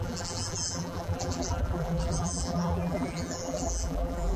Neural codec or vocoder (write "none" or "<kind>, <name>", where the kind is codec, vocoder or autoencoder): vocoder, BigVGAN v2